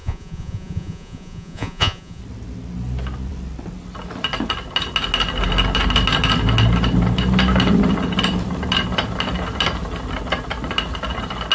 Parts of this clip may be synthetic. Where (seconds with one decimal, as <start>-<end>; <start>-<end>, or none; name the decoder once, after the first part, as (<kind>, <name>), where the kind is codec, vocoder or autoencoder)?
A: 0.0-2.2 (vocoder, Vocos)